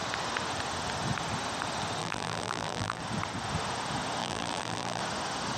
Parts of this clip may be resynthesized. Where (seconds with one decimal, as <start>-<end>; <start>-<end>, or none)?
2.0-3.0; 4.2-5.0